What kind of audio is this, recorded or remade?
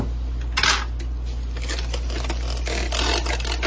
recorded